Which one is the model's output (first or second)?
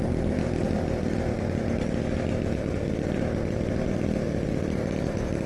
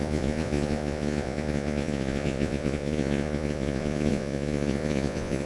second